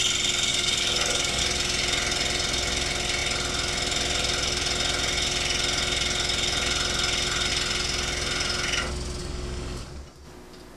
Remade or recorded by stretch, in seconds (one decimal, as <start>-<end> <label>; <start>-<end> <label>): 0.0-0.5 recorded; 0.5-1.4 remade; 1.4-9.2 recorded; 9.2-9.9 remade; 9.9-10.8 recorded